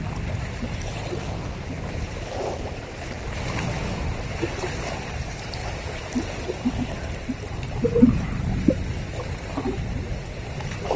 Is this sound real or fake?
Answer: real